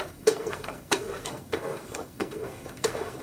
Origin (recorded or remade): remade